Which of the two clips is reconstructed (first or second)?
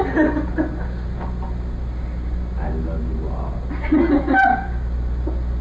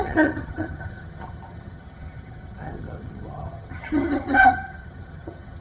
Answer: second